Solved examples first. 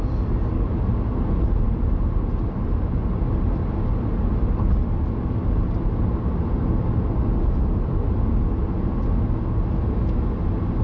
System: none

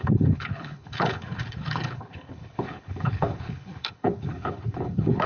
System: codec, HILCodec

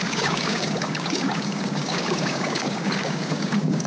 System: codec, DAC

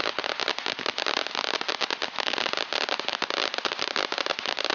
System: none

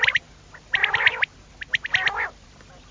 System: none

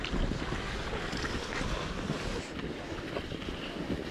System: none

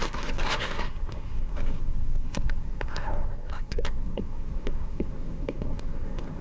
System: codec, SNAC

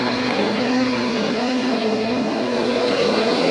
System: codec, SNAC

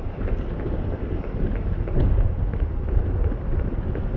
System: none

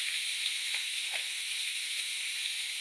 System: autoencoder, DAC-VAE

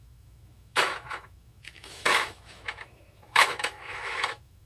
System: autoencoder, DAC-VAE